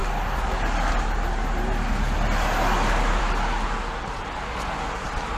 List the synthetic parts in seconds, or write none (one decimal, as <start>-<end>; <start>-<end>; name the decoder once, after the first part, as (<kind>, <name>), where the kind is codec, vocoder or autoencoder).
none